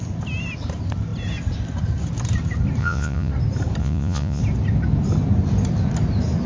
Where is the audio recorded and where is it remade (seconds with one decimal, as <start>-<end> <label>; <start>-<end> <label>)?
0.0-2.8 recorded; 2.8-3.3 remade; 3.3-3.8 recorded; 3.8-4.4 remade; 4.4-6.5 recorded